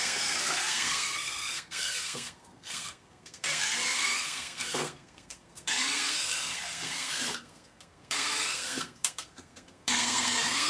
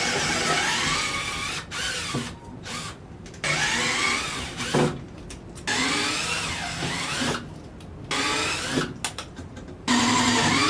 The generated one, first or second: first